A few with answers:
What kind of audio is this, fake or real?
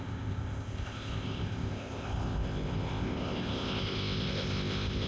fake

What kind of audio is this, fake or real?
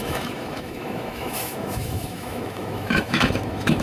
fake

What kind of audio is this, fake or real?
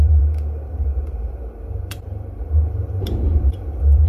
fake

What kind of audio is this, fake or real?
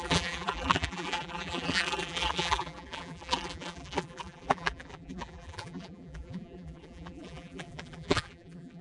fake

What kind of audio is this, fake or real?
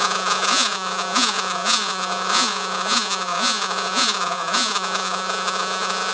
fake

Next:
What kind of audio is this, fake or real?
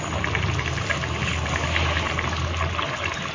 real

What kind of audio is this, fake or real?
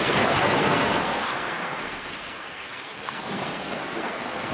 fake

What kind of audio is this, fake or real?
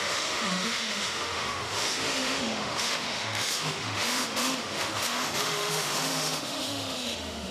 fake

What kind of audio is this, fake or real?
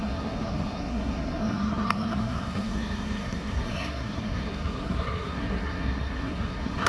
fake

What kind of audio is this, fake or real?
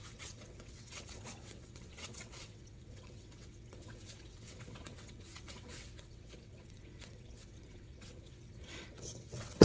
fake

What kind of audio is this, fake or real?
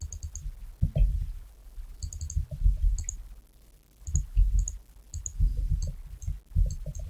real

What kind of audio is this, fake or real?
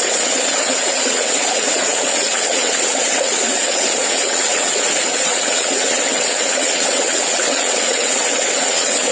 fake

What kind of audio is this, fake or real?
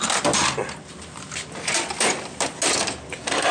real